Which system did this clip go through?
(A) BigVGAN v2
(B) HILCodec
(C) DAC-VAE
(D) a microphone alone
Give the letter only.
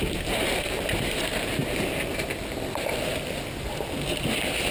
D